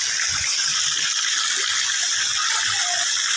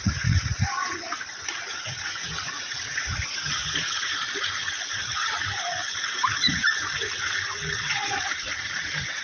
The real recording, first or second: first